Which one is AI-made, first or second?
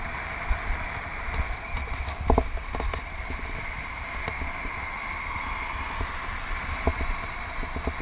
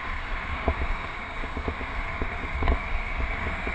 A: second